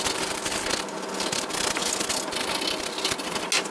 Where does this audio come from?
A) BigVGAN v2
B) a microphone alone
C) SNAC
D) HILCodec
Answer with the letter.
B